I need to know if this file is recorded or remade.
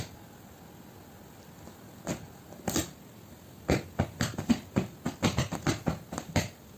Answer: recorded